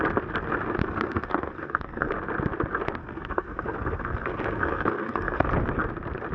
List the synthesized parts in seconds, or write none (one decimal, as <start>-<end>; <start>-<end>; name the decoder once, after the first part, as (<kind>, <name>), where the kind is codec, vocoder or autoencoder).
0.8-2.1 (codec, SNAC); 3.0-5.5

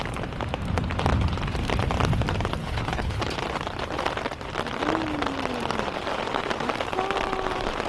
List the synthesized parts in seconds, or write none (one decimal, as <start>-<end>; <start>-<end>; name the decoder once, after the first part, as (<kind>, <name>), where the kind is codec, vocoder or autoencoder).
2.6-3.2 (codec, HILCodec)

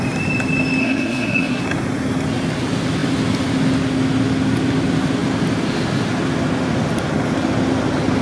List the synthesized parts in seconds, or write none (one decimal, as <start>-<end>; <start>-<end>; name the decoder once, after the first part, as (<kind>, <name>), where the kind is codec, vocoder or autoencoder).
0.8-1.6 (codec, SNAC)

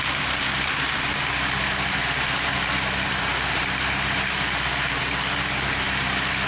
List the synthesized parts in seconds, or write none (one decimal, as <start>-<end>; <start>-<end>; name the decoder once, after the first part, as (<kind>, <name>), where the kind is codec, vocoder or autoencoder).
2.5-4.3 (vocoder, BigVGAN v2)

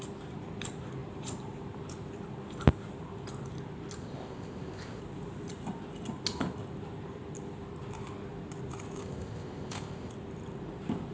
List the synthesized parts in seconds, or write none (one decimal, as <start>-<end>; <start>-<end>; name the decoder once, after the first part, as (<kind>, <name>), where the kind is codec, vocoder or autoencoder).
4.0-5.0 (codec, ZipCodec); 9.0-10.1

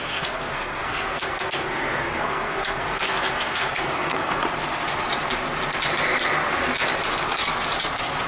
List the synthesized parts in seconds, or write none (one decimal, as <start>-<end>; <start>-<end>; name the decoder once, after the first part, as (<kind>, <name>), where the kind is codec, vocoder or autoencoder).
0.0-4.4 (codec, SNAC)

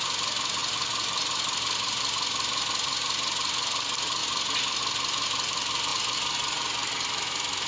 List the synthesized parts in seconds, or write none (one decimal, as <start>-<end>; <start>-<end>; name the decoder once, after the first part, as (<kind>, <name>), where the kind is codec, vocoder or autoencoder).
0.6-2.0 (vocoder, BigVGAN v2)

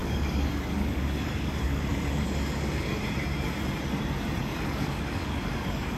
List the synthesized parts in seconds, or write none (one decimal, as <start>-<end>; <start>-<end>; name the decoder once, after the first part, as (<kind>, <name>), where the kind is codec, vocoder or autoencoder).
0.0-3.0 (codec, DAC); 4.4-6.0